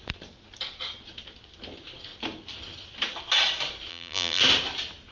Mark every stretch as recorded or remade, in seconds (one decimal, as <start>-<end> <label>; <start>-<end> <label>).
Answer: 0.0-3.9 recorded; 3.9-4.4 remade; 4.4-5.1 recorded